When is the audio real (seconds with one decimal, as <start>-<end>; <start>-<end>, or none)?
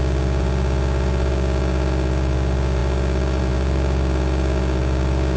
0.0-5.4